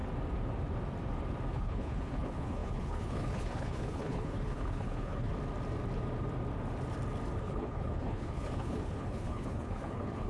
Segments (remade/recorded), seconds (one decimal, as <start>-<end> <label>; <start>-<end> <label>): 0.0-1.5 recorded; 1.5-5.3 remade; 5.3-7.4 recorded; 7.4-10.3 remade